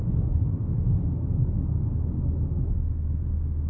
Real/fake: real